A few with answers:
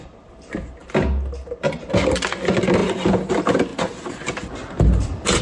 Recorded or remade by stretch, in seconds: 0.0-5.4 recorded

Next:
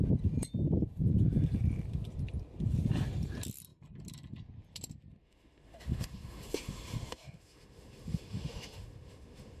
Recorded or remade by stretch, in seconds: 0.0-5.2 recorded; 5.2-9.6 remade

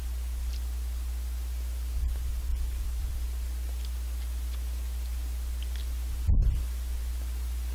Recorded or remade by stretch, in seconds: 0.0-7.7 recorded

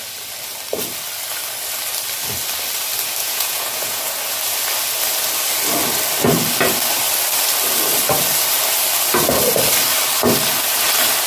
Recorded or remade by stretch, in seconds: 0.0-3.2 recorded; 3.2-4.1 remade; 4.1-11.3 recorded